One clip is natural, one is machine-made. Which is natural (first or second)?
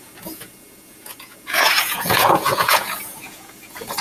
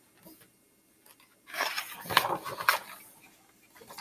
second